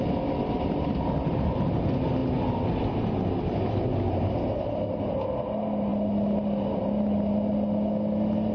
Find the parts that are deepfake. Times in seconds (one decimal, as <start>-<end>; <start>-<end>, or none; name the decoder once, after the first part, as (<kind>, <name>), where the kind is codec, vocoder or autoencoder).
none

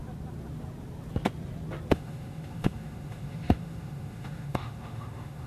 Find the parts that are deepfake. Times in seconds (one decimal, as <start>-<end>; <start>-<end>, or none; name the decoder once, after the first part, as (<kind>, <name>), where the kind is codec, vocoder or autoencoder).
1.9-5.5 (autoencoder, DAC-VAE)